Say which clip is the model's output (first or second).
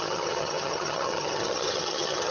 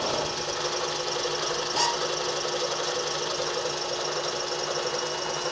first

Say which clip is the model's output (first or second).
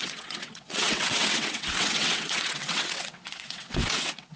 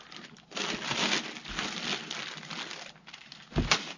first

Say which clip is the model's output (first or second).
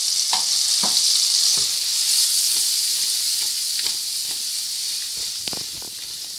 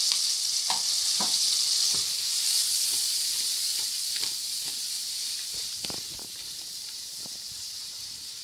second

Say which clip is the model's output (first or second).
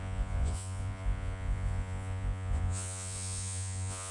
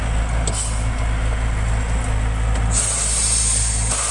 first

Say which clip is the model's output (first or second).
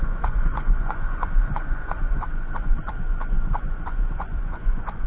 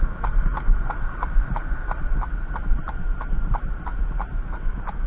first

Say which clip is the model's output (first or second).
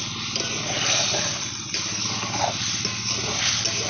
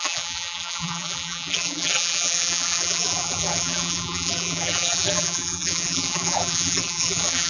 second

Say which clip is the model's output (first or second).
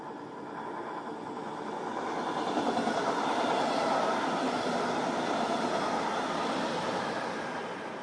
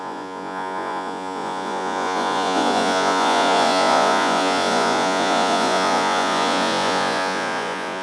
second